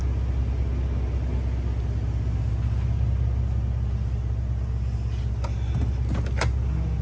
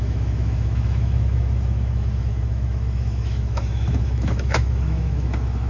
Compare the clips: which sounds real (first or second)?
first